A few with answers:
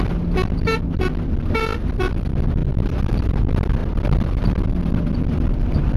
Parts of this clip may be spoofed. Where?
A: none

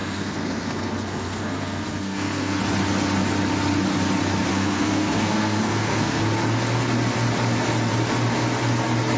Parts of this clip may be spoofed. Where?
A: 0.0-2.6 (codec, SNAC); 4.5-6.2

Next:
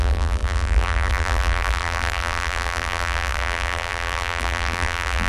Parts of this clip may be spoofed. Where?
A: 0.0-5.3 (vocoder, BigVGAN v2)